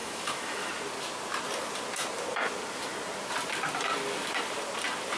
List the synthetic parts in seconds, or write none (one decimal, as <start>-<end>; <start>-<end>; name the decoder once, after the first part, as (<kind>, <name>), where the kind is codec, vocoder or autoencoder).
0.0-0.7 (autoencoder, DAC-VAE)